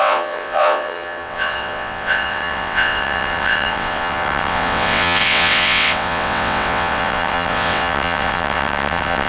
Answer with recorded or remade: remade